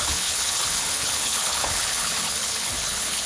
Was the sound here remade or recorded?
remade